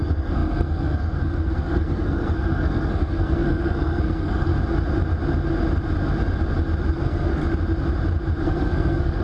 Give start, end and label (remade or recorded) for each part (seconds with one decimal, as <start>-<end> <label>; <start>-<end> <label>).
0.0-4.5 remade; 4.5-6.9 recorded; 6.9-7.4 remade; 7.4-8.4 recorded; 8.4-9.2 remade